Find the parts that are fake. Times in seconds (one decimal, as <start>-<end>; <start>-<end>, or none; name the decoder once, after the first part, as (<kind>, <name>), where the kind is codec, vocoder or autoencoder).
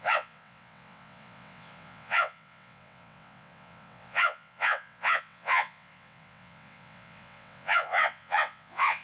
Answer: 0.0-9.0 (vocoder, WaveNeXt)